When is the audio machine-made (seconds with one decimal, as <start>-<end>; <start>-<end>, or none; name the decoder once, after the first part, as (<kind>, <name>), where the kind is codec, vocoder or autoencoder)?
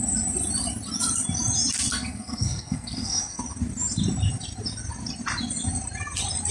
1.9-3.4 (codec, SNAC)